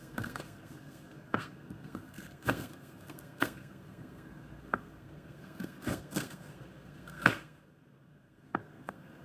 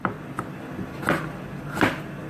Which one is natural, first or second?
second